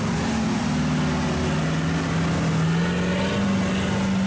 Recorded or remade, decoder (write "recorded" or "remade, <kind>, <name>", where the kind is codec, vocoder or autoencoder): recorded